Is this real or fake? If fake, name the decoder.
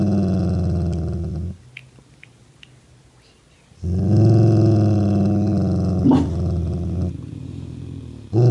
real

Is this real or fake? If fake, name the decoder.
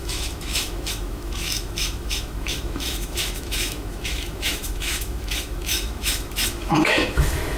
fake, autoencoder, DAC-VAE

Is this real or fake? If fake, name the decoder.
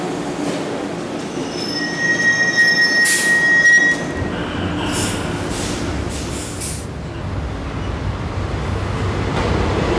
real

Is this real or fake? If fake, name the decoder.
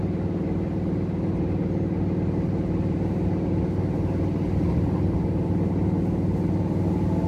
real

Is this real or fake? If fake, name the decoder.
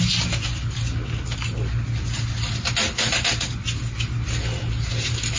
real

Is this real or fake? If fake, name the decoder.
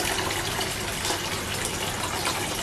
real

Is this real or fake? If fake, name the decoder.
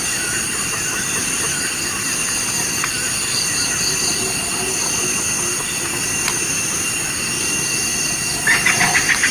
real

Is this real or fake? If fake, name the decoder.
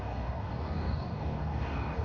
fake, codec, DAC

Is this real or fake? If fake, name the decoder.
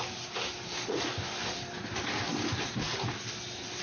real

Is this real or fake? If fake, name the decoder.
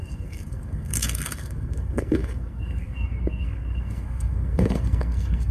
fake, codec, SNAC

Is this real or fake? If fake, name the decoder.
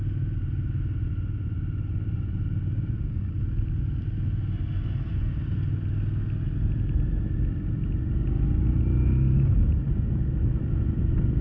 real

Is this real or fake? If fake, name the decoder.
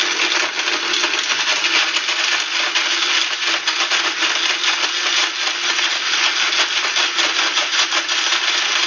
real